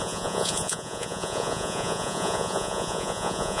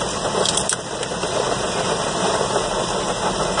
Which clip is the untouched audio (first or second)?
second